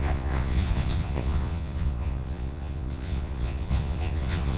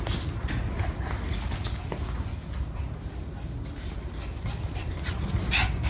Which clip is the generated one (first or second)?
first